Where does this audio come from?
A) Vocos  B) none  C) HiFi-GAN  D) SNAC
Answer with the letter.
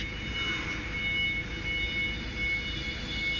B